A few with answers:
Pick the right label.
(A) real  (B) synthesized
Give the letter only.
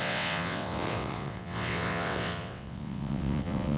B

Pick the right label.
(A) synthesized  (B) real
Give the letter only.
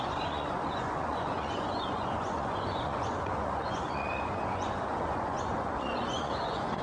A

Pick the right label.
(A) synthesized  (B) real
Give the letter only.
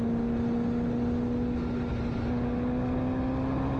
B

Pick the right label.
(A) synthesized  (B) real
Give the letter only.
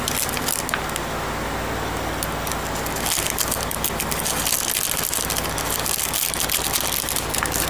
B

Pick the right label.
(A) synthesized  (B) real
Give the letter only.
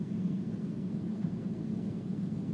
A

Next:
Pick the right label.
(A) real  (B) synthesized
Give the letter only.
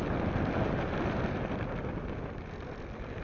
A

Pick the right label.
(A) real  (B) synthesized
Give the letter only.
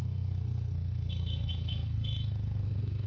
B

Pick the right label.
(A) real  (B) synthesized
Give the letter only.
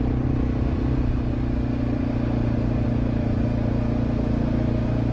A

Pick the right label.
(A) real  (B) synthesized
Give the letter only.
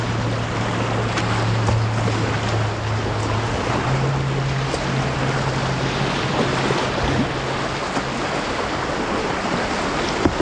A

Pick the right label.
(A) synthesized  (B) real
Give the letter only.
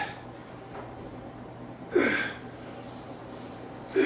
A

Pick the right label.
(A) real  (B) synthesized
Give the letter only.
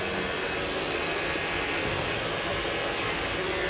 A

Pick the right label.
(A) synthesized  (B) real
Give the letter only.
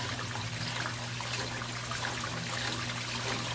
B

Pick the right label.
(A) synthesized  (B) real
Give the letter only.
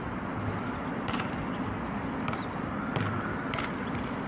B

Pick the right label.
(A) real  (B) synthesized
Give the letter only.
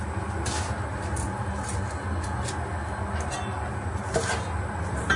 A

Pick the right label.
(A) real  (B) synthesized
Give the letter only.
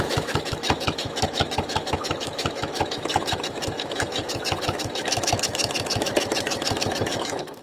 B